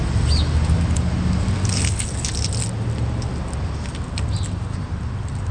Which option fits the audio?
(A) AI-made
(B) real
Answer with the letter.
B